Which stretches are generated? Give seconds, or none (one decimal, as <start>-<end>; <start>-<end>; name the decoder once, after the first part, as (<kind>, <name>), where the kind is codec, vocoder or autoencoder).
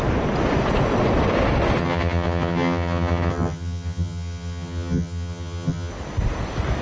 1.8-5.9 (vocoder, HiFi-GAN)